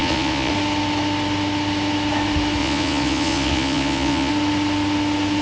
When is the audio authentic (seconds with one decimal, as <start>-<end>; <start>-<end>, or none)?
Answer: 0.5-2.6; 4.3-5.4